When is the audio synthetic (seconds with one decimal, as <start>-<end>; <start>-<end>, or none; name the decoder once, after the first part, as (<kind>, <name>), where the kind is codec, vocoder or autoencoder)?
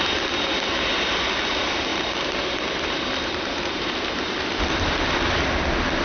1.9-4.6 (vocoder, BigVGAN v2)